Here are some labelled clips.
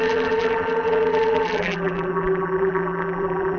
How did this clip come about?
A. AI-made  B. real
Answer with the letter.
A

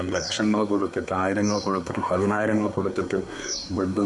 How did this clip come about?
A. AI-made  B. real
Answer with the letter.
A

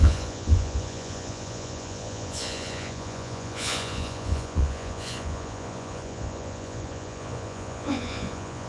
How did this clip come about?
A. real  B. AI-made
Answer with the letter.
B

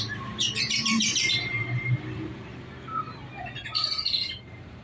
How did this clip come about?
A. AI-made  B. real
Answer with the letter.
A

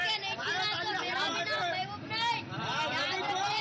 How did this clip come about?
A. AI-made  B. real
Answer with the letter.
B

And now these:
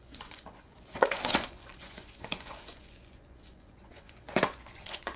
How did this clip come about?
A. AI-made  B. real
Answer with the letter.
A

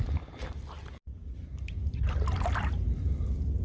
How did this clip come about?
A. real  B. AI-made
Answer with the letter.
A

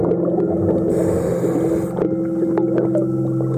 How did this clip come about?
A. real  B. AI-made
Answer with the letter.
A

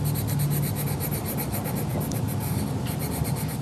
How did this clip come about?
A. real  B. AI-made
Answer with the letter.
A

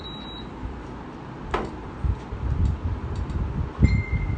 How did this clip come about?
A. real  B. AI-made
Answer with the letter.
A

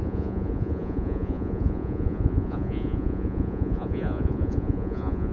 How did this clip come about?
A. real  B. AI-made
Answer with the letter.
B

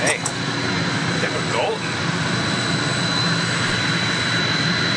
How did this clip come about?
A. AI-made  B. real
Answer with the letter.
B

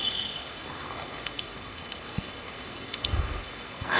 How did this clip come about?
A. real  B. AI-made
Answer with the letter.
B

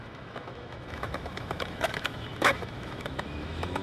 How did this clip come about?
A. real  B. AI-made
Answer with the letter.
B